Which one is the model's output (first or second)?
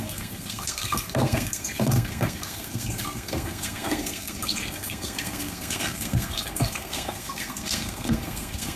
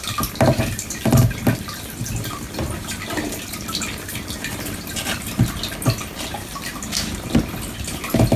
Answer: first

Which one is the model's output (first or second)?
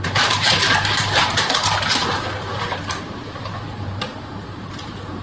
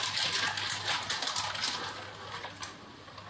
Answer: first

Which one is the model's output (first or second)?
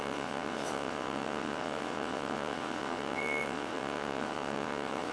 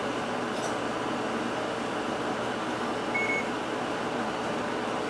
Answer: first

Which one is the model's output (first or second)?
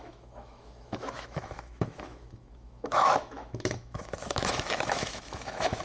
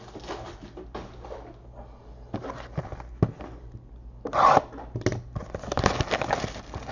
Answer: first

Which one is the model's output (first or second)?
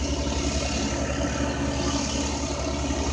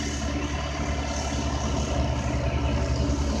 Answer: second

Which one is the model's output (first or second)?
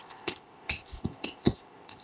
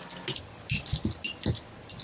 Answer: first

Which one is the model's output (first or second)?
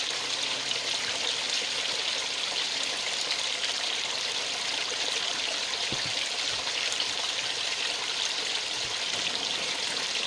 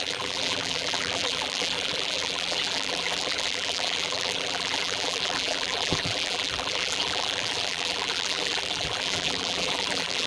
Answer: second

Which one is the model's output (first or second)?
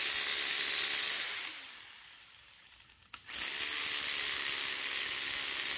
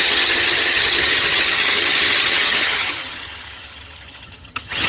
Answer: second